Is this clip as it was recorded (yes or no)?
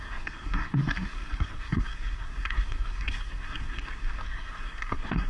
no